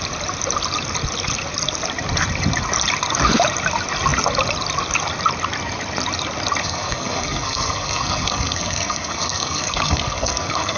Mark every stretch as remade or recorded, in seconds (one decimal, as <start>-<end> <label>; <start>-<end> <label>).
0.0-6.6 recorded; 6.6-10.8 remade